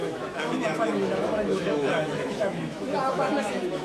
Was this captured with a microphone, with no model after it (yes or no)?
no